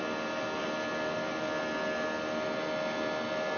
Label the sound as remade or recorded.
recorded